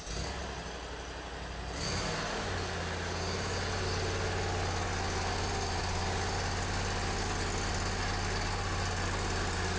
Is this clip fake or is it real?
real